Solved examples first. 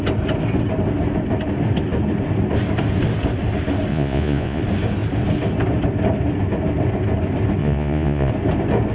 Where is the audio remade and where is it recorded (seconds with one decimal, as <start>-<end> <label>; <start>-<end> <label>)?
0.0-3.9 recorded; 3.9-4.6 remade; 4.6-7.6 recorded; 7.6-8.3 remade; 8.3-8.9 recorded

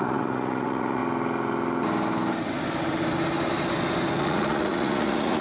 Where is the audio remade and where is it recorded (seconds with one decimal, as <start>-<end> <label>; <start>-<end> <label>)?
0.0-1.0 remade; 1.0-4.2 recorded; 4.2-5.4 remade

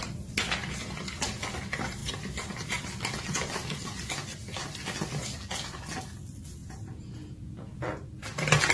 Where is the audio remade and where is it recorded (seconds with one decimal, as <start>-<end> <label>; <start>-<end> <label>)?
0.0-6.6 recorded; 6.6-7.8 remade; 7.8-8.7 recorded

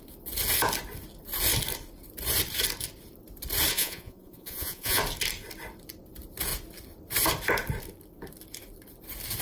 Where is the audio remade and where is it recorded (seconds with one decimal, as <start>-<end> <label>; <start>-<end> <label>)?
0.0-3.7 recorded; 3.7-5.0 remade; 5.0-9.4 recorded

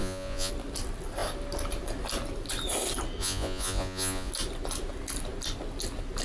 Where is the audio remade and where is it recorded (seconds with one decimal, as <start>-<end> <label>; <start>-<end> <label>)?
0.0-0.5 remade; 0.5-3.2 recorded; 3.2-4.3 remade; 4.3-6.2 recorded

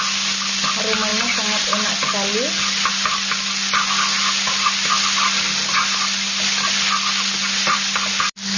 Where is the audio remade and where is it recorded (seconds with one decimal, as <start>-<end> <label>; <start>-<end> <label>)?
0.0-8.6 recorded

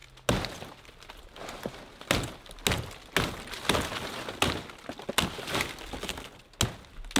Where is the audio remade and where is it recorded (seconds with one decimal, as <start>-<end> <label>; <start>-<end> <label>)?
0.0-7.2 recorded